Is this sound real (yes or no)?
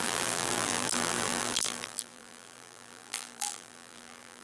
no